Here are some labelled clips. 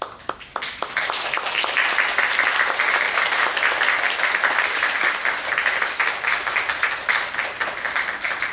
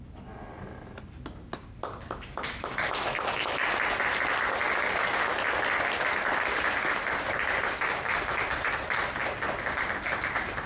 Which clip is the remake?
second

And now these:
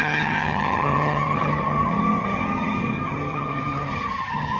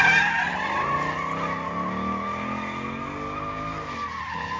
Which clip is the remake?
first